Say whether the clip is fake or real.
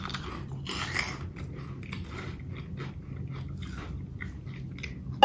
real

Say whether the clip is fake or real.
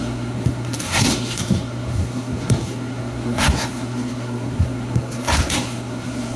fake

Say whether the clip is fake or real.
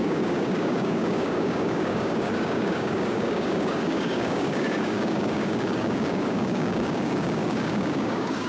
fake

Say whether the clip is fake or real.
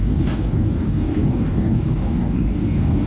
fake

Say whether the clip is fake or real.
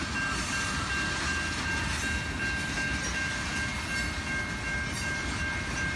real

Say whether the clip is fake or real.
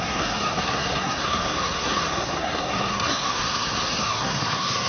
fake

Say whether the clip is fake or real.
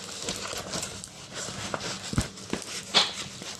real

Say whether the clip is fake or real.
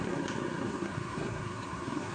fake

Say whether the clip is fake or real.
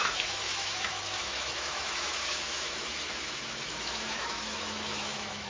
fake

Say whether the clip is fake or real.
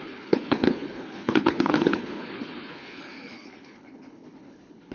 fake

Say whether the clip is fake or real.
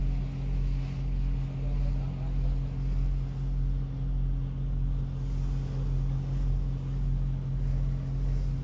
real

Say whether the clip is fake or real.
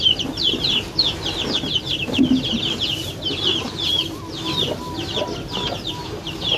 real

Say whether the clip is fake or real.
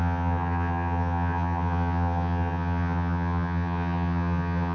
fake